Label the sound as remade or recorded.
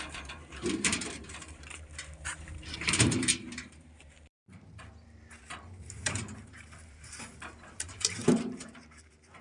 remade